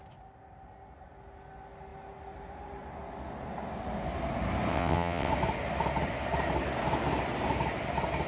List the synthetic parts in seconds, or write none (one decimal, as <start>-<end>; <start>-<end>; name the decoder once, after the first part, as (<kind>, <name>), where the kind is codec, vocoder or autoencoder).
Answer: 4.7-5.3 (vocoder, WaveNeXt)